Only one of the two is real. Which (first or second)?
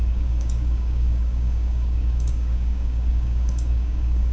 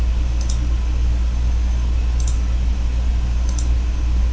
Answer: second